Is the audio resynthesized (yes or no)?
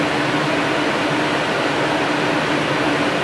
no